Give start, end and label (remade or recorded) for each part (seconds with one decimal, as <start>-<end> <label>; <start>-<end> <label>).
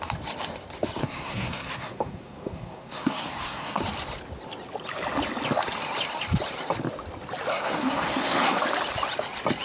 0.0-1.0 recorded; 1.0-3.8 remade; 3.8-7.5 recorded; 7.5-8.6 remade; 8.6-9.6 recorded